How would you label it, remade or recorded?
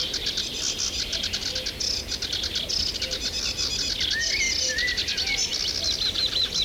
recorded